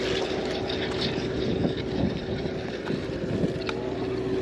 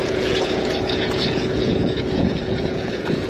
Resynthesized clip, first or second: second